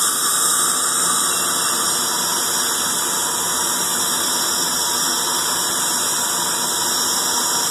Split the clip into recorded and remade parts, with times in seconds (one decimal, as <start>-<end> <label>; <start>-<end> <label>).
0.0-7.7 recorded